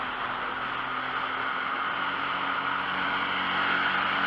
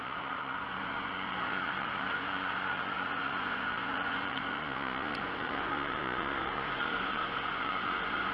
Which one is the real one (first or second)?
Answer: first